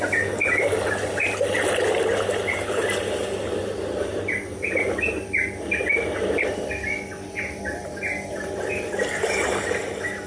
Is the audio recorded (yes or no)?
yes